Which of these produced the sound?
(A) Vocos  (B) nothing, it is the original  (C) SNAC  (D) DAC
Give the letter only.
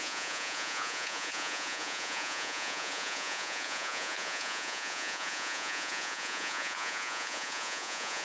A